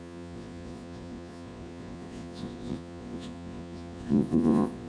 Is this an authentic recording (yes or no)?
no